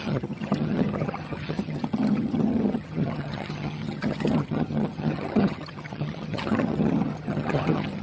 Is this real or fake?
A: fake